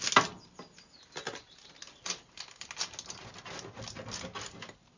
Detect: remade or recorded recorded